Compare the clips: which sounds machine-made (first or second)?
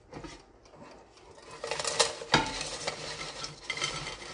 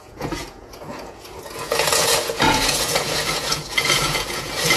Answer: second